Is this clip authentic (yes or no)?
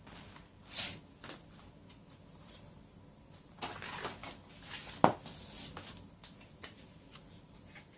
yes